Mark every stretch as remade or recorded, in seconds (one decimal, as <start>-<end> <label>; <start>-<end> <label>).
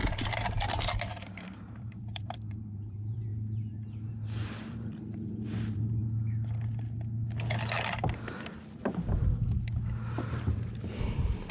0.0-3.3 remade; 3.3-4.1 recorded; 4.1-6.0 remade; 6.0-10.3 recorded; 10.3-11.5 remade